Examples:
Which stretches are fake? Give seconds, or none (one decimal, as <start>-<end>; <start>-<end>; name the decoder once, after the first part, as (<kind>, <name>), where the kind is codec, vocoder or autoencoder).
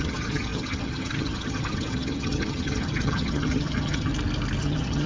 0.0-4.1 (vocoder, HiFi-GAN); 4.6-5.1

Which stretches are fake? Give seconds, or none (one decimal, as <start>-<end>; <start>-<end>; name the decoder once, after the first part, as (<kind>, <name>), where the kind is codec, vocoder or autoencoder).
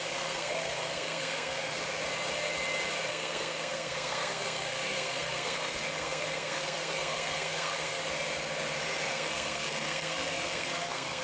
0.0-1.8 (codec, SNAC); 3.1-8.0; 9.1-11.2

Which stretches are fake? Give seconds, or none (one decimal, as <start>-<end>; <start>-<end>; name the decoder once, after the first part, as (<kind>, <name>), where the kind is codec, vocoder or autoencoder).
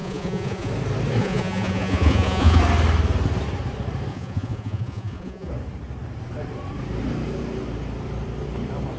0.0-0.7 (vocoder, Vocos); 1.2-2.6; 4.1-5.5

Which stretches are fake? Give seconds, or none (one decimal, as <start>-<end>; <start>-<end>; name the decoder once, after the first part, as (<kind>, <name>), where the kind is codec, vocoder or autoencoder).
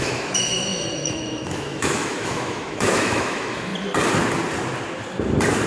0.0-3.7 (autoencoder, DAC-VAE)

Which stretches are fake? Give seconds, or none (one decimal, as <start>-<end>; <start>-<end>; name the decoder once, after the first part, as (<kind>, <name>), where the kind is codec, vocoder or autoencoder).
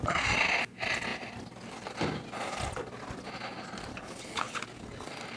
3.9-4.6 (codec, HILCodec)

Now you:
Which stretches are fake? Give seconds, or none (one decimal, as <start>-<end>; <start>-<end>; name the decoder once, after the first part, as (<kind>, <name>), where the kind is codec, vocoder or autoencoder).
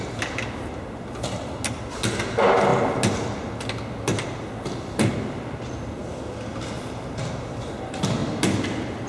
none